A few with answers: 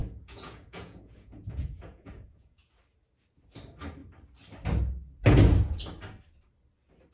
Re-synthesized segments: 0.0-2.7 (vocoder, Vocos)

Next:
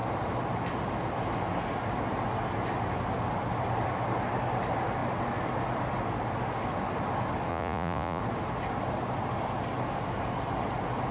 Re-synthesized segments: 7.5-8.2 (vocoder, Vocos)

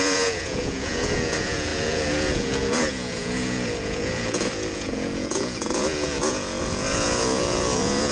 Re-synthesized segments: 0.0-8.1 (vocoder, Vocos)

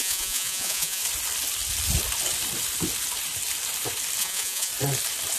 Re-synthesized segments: 0.0-1.0 (vocoder, Vocos); 4.2-4.7

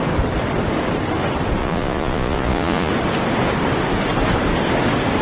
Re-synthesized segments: 1.6-2.9 (vocoder, Vocos)